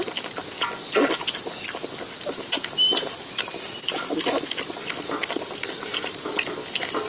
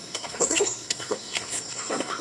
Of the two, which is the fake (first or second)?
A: second